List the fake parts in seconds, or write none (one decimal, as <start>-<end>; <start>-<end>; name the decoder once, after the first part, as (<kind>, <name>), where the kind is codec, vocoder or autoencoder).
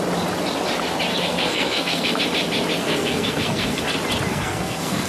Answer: 1.1-2.2 (codec, SNAC); 2.8-3.8; 4.3-5.1